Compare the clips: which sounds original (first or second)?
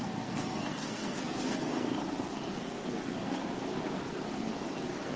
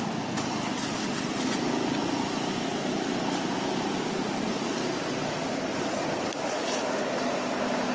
second